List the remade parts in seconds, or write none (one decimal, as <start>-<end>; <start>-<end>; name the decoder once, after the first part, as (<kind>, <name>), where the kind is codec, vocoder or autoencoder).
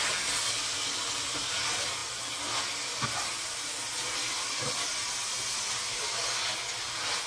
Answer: none